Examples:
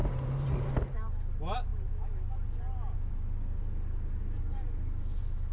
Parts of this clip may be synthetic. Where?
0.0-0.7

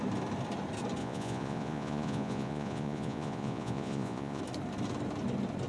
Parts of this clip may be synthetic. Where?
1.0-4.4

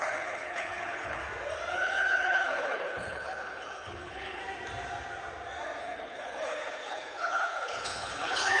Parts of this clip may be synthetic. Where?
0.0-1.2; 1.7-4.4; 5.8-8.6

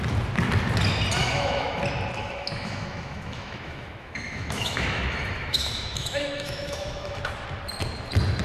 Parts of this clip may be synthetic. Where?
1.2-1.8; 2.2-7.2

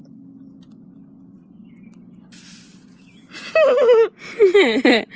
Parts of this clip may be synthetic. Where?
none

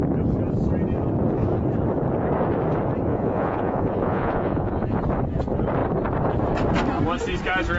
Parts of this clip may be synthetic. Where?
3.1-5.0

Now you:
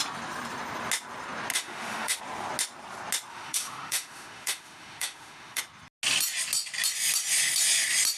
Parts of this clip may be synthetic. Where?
1.5-2.2; 3.3-5.6

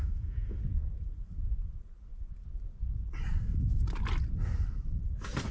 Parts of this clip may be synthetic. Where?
0.0-0.6